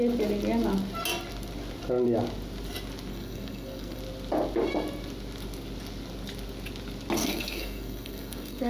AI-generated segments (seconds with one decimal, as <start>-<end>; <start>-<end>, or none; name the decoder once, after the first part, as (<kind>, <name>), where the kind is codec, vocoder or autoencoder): 3.1-4.0 (codec, SNAC); 7.2-8.7